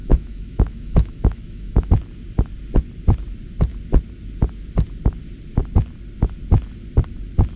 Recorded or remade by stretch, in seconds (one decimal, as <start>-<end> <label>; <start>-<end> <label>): 0.0-1.9 remade; 1.9-7.6 recorded